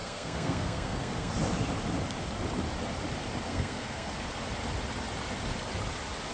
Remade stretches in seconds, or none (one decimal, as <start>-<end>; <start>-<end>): 0.0-1.3; 3.5-4.1